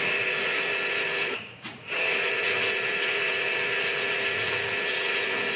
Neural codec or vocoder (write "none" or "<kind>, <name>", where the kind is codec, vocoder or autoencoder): vocoder, Vocos